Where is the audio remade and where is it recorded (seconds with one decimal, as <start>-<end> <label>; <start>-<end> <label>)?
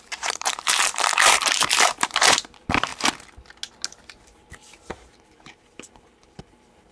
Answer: 0.0-2.9 remade; 2.9-4.1 recorded; 4.1-6.9 remade